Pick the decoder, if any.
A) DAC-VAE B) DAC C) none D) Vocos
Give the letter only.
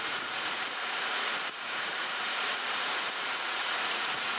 D